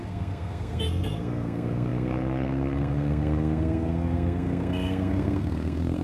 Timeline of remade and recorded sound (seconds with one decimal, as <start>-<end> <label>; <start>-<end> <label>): 0.0-6.0 remade

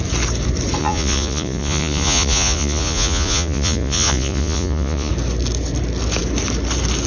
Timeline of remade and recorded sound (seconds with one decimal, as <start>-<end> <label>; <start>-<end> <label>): 0.0-0.8 recorded; 0.8-5.1 remade; 5.1-7.1 recorded